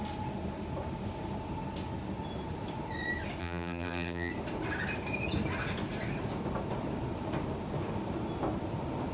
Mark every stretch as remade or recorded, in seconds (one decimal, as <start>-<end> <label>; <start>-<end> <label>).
0.0-3.4 recorded; 3.4-4.3 remade; 4.3-9.1 recorded